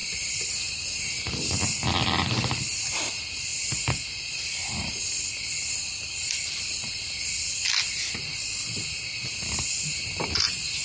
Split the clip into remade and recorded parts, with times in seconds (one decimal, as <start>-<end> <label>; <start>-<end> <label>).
0.0-3.1 remade; 3.1-10.8 recorded